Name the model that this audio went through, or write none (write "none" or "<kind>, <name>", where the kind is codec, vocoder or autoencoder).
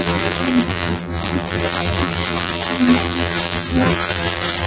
vocoder, BigVGAN v2